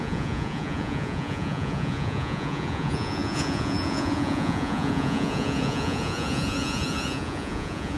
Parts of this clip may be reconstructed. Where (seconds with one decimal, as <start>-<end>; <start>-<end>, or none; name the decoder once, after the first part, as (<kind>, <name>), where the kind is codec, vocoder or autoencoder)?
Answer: 0.0-8.0 (vocoder, Vocos)